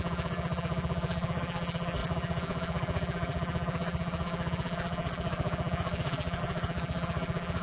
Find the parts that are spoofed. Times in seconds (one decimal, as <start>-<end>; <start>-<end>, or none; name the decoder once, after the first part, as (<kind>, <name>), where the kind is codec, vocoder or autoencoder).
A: 0.0-7.6 (vocoder, BigVGAN v2)